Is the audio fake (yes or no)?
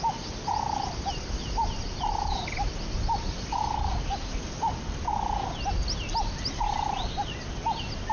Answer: no